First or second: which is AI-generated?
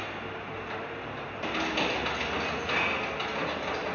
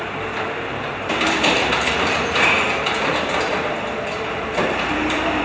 second